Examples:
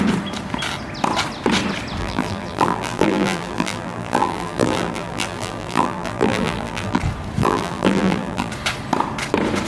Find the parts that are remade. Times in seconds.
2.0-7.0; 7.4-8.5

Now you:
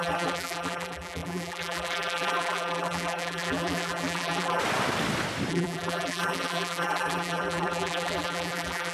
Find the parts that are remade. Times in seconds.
0.0-4.6; 5.5-8.9

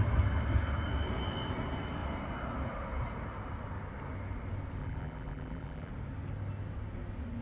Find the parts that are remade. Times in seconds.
4.8-5.9

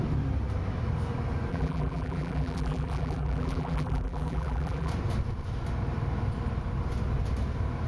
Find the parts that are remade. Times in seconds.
1.5-4.9